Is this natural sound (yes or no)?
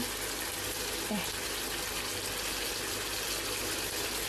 yes